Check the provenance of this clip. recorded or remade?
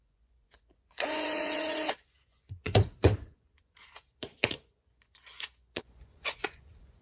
remade